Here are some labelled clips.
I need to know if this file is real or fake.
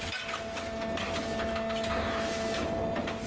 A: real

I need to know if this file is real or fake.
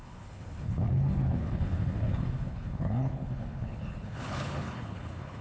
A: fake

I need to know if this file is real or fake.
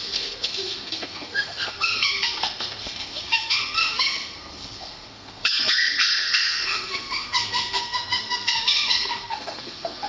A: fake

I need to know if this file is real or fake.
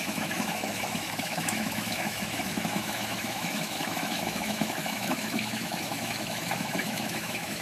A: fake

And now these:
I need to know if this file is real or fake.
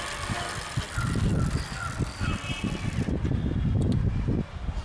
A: real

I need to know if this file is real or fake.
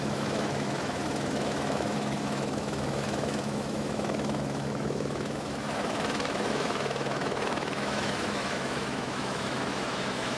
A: fake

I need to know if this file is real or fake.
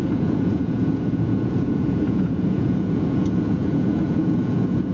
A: fake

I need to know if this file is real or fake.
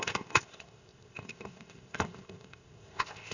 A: fake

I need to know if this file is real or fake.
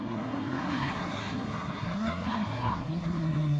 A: fake